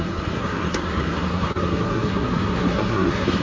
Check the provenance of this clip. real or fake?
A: fake